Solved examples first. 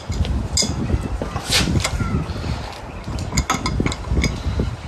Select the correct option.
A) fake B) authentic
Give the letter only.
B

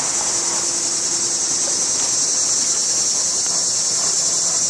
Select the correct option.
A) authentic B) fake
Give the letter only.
A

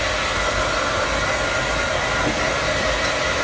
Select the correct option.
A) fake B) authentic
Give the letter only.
B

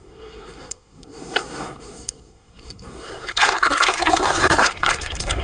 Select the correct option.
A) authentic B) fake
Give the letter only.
B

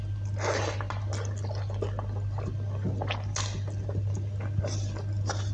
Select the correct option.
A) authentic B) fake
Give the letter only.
A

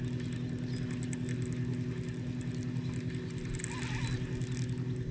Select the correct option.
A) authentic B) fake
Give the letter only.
A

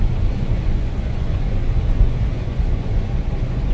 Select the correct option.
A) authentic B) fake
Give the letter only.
B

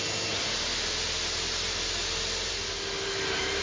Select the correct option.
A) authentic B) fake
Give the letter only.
A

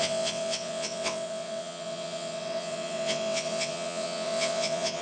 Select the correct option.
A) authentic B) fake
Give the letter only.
B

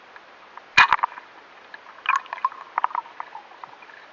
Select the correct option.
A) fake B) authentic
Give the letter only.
B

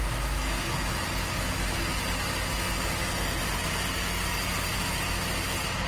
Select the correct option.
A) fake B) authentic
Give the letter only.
B